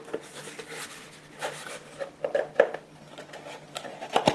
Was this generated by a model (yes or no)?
no